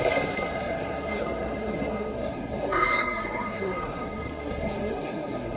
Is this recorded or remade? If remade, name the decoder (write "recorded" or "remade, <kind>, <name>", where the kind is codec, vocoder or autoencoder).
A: remade, codec, SNAC